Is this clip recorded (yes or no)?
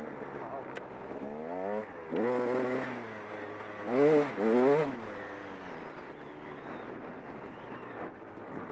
yes